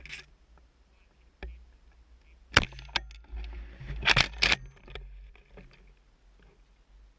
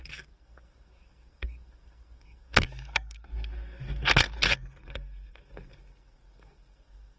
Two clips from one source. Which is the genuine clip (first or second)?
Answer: first